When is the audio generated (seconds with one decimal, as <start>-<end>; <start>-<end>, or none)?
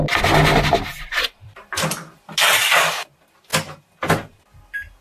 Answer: 0.9-2.9